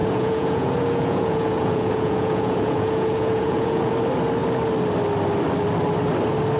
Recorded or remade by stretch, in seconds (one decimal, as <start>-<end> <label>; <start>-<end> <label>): 0.0-3.9 remade; 3.9-6.6 recorded